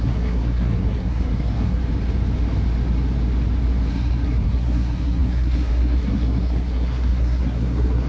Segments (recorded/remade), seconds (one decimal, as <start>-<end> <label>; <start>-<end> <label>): 0.0-1.8 remade; 1.8-3.9 recorded; 3.9-8.1 remade